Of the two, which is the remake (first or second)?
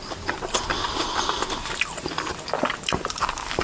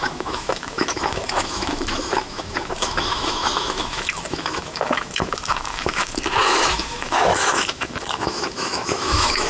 second